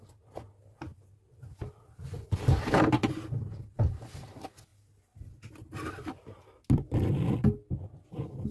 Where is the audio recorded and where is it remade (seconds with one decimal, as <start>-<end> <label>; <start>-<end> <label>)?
0.0-8.5 recorded